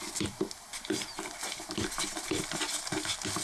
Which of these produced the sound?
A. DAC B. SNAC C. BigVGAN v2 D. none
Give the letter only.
D